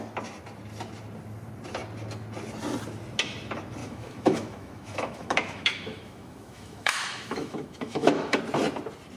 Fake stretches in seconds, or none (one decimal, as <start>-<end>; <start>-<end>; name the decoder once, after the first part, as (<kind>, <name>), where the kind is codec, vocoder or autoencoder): 3.8-8.4 (autoencoder, DAC-VAE)